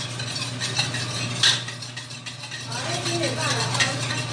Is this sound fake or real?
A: real